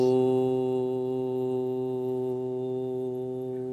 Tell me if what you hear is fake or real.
real